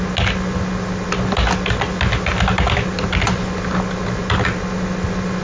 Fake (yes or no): no